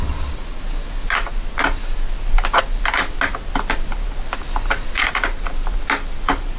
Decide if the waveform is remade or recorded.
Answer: recorded